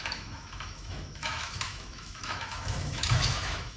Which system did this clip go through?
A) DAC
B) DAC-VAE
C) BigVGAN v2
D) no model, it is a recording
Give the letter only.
B